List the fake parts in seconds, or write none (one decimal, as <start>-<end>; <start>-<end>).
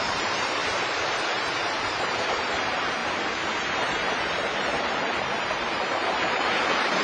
0.0-0.6; 1.3-3.0; 3.6-7.0